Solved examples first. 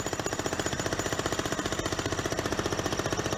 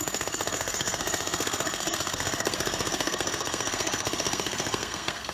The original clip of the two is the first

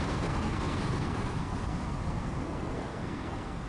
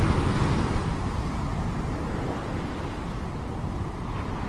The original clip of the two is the second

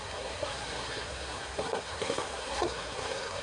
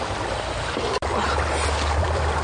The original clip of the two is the second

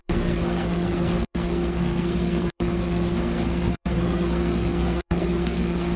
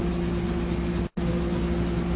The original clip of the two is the second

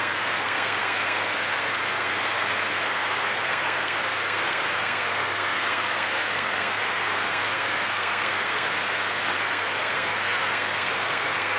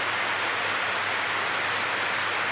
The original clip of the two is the second